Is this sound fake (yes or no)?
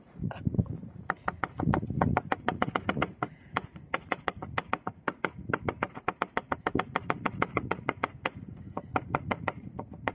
yes